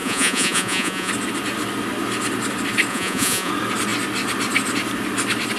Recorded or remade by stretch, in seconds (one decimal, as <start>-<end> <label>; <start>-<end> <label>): 0.0-1.1 remade; 1.1-2.9 recorded; 2.9-3.5 remade; 3.5-5.6 recorded